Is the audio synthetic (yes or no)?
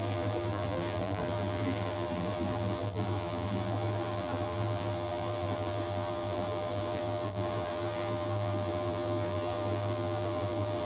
yes